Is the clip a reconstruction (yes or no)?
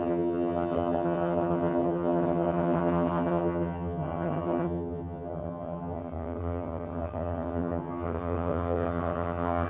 yes